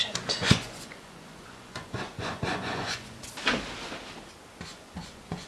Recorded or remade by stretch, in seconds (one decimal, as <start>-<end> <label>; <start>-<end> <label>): 0.0-3.3 remade; 3.3-4.7 recorded; 4.7-5.5 remade